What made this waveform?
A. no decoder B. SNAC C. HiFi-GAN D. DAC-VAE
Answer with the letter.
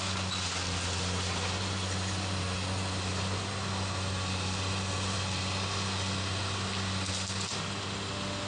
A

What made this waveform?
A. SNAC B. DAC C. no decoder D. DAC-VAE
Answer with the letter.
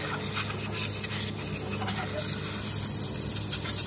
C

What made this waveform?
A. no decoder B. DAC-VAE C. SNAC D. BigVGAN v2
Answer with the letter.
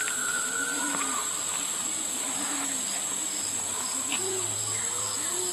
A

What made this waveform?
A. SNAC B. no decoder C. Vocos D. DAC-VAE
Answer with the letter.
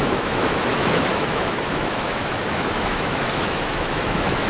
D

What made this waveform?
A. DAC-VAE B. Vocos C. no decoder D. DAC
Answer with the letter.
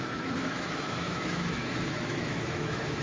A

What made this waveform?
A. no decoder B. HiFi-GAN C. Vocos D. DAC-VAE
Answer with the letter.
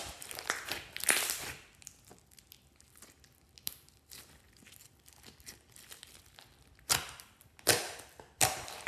A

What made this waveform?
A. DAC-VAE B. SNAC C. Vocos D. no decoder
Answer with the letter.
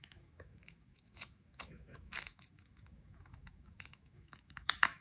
A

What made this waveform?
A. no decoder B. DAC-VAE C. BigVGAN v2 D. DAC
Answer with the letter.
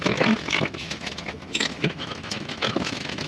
B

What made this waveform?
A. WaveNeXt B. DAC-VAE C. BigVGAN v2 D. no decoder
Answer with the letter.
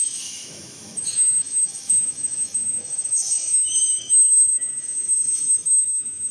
B